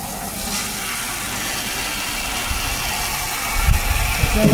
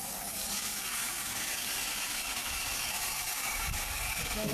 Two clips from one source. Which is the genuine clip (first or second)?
first